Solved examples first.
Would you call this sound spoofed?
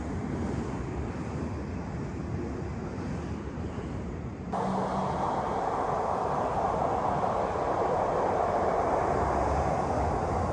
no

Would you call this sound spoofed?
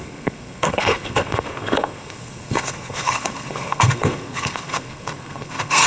yes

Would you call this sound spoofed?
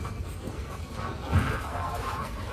yes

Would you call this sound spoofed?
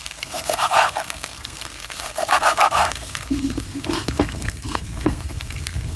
yes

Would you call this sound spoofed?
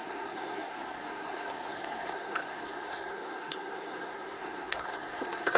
yes